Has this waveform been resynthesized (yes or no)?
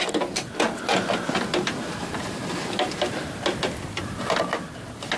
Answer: no